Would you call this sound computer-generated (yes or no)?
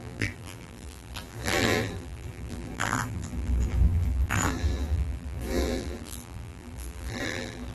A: yes